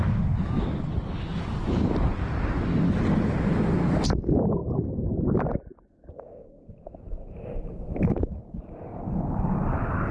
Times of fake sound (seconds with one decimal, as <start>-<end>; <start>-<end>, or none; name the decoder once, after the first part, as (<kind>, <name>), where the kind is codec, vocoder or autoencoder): 1.3-2.5 (vocoder, BigVGAN v2); 4.6-8.6